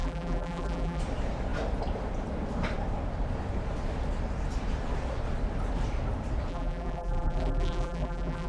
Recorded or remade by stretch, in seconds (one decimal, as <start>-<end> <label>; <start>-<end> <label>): 0.0-1.0 remade; 1.0-6.5 recorded; 6.5-8.5 remade